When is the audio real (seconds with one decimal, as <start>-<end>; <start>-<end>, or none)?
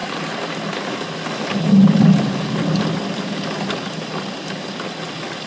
0.0-5.5